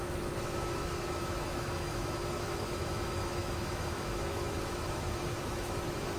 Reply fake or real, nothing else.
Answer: fake